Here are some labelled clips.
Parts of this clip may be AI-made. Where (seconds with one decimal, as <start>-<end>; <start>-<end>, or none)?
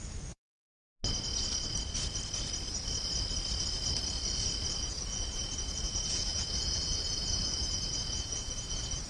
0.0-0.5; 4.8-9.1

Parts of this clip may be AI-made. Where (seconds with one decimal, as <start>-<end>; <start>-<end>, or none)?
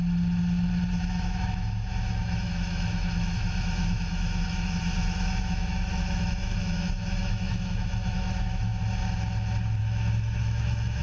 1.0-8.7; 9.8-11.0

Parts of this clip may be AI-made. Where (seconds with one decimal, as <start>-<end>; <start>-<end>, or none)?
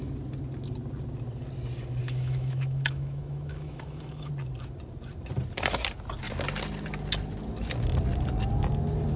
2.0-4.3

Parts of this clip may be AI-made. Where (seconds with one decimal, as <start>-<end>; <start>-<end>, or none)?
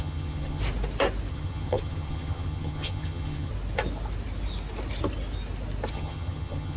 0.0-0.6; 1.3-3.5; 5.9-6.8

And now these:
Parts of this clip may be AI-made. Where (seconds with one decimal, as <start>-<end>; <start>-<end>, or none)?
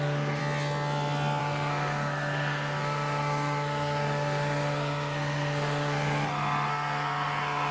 0.0-0.4; 1.4-7.7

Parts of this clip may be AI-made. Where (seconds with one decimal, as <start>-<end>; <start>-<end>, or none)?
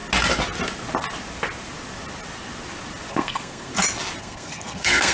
3.1-3.7; 4.2-5.1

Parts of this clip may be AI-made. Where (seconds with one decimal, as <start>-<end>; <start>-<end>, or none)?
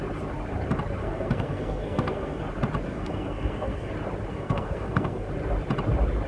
1.0-2.4; 2.9-3.9; 4.3-5.3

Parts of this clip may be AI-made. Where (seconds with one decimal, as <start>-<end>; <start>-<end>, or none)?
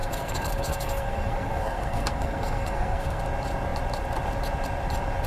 0.0-3.2